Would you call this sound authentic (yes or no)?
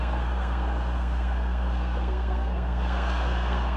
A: no